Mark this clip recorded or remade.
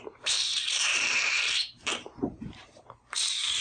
remade